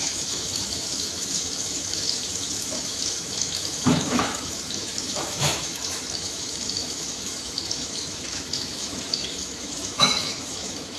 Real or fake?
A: fake